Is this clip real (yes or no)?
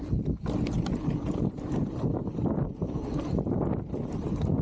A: yes